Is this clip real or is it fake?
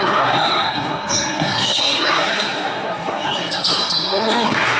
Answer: fake